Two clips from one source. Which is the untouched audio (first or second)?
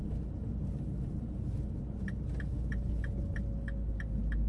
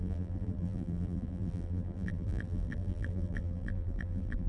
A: first